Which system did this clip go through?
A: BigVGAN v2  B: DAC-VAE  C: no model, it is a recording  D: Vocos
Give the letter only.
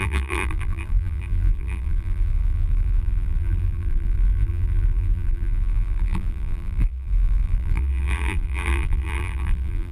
A